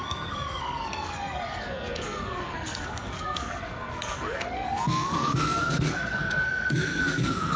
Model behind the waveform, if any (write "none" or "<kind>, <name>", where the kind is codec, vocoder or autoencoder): codec, SNAC